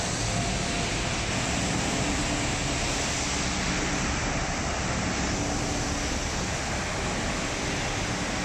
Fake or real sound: real